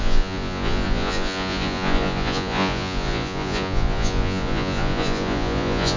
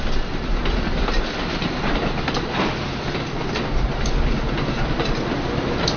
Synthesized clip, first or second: first